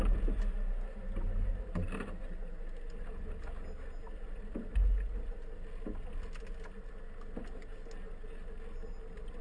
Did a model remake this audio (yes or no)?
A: no